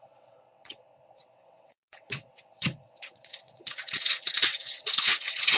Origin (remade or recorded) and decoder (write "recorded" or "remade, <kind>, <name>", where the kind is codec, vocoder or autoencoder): remade, vocoder, WaveNeXt